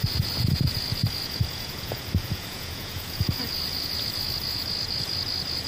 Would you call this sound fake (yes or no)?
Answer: yes